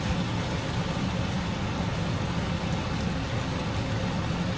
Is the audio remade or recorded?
recorded